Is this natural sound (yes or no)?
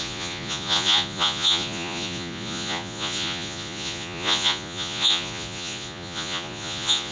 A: no